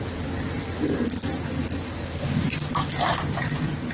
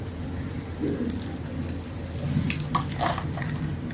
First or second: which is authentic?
second